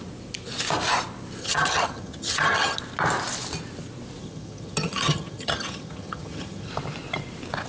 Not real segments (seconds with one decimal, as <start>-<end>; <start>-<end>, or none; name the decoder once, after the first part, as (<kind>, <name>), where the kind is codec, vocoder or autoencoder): 1.4-2.8 (vocoder, HiFi-GAN); 4.2-6.7